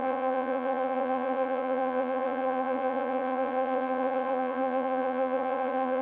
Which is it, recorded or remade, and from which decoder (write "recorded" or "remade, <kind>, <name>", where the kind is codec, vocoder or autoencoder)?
remade, vocoder, Vocos